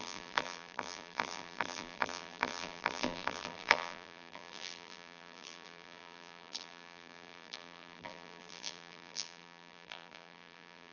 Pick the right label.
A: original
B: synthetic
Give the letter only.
B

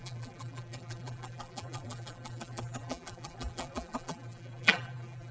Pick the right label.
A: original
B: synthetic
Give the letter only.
B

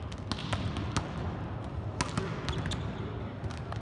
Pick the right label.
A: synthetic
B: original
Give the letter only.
B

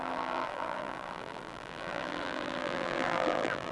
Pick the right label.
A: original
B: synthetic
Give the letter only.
B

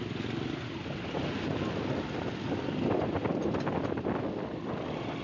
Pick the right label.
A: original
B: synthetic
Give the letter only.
A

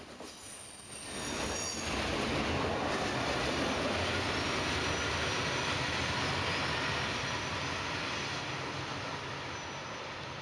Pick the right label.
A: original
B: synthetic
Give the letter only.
A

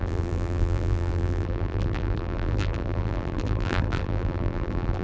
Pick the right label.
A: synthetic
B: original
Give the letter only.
A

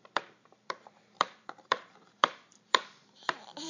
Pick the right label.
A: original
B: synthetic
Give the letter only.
B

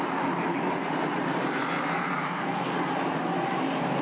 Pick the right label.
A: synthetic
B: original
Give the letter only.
A